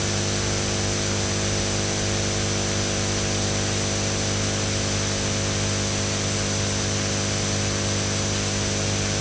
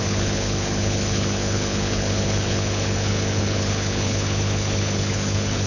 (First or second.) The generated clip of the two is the second